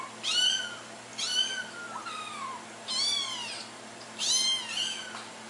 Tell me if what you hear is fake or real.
real